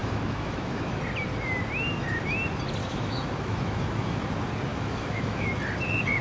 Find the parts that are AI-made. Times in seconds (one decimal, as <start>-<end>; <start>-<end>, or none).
0.0-0.9; 2.8-4.2; 4.7-5.5